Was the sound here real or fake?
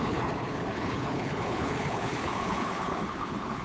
fake